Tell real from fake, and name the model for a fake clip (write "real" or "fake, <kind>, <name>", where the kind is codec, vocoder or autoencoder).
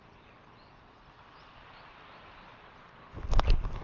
fake, vocoder, BigVGAN v2